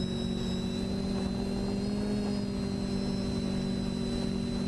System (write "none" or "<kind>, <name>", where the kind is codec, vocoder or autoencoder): none